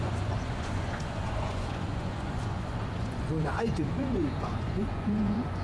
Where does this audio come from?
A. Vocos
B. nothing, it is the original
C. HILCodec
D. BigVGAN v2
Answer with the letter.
A